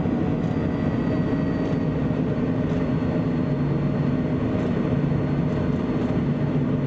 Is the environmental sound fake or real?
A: real